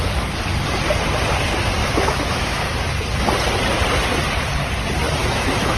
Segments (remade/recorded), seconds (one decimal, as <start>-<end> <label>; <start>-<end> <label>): 0.0-1.8 recorded; 1.8-3.0 remade; 3.0-5.2 recorded; 5.2-5.8 remade